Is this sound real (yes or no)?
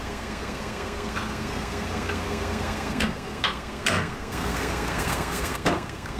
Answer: no